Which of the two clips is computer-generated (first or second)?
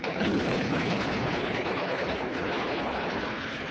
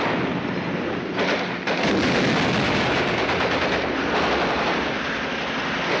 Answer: first